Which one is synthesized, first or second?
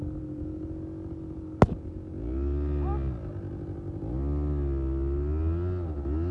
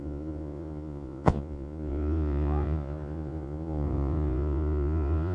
second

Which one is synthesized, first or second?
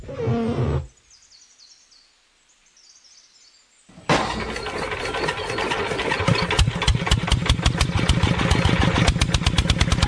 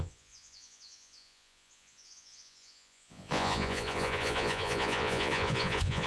second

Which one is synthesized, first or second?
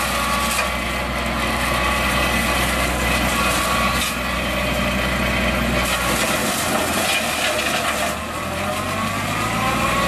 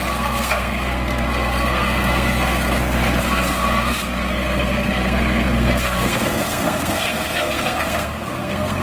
second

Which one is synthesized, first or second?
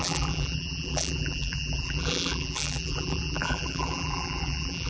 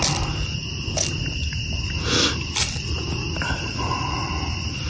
first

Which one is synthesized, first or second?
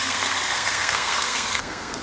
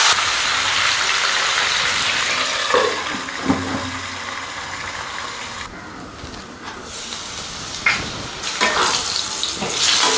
first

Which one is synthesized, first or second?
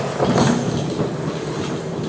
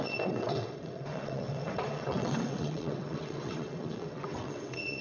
second